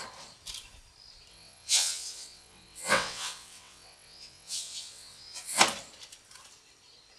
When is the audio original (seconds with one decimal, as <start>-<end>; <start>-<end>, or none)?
0.0-1.3; 5.6-7.2